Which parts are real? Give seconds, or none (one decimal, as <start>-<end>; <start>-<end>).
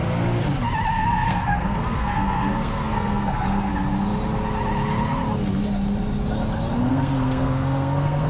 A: 0.0-0.9; 3.7-6.9